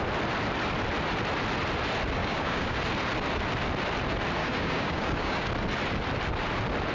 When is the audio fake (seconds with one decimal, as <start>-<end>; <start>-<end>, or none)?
2.2-2.8; 4.4-5.5